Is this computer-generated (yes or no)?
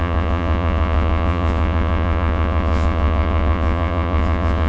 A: yes